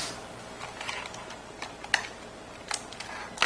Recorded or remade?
recorded